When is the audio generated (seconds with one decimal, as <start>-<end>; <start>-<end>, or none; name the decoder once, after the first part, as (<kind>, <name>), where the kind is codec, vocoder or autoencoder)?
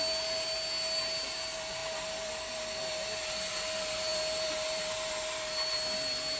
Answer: none